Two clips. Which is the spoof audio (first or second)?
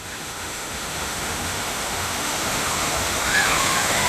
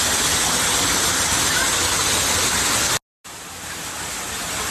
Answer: first